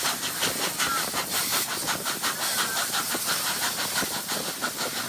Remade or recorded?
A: recorded